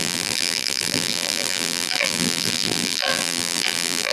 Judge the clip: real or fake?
fake